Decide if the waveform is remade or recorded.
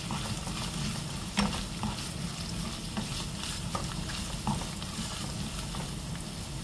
recorded